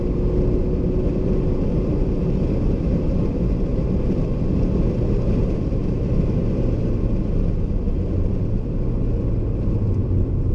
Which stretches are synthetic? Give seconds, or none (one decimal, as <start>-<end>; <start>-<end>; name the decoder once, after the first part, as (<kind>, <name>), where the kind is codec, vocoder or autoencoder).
none